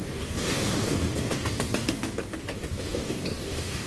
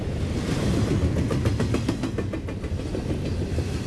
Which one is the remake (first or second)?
first